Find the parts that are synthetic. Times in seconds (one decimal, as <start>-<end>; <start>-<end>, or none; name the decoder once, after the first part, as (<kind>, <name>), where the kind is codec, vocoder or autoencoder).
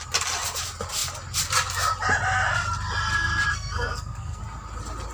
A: 3.5-4.4 (codec, SNAC)